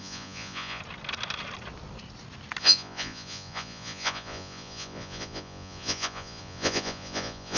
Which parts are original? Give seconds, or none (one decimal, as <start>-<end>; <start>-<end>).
0.8-2.6